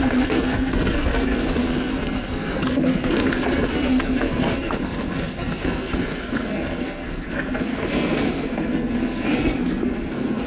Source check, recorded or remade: remade